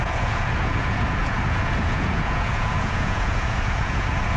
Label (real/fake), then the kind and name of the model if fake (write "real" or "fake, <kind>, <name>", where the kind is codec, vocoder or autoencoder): fake, vocoder, Vocos